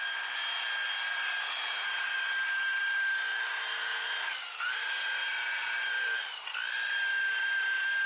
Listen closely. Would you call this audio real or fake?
real